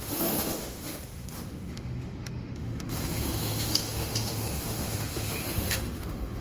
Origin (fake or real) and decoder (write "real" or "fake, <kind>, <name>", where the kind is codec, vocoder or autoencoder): fake, autoencoder, DAC-VAE